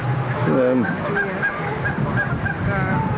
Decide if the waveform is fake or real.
real